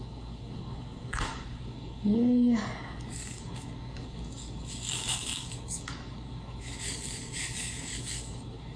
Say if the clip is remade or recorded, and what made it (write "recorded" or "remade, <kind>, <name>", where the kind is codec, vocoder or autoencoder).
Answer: remade, codec, DAC